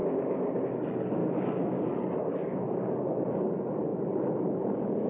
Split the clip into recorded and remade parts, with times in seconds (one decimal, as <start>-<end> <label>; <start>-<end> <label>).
0.0-0.6 remade; 0.6-1.2 recorded; 1.2-1.8 remade; 1.8-2.3 recorded; 2.3-2.9 remade; 2.9-5.1 recorded